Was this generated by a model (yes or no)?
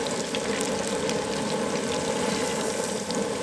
no